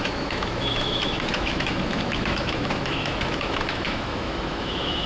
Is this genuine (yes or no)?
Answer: no